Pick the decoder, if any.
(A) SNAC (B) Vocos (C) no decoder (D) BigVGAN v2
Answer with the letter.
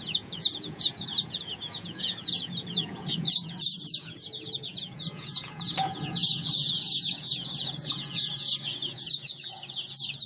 B